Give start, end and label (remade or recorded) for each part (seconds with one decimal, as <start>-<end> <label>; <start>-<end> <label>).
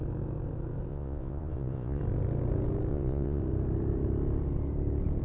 0.0-0.9 recorded; 0.9-2.0 remade; 2.0-2.9 recorded; 2.9-3.4 remade; 3.4-5.2 recorded